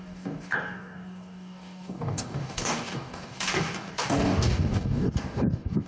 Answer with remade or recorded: remade